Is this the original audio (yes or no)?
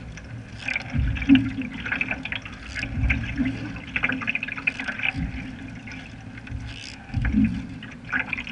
yes